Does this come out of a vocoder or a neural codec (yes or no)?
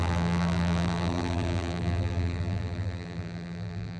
yes